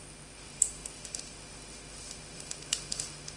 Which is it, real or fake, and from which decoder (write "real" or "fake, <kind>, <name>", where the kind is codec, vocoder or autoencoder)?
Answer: fake, autoencoder, DAC-VAE